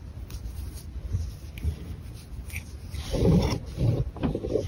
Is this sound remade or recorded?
remade